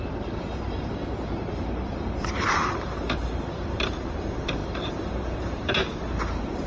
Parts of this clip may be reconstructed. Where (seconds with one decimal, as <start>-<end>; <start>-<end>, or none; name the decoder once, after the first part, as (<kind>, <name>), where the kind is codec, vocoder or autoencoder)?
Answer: 0.0-6.7 (vocoder, BigVGAN v2)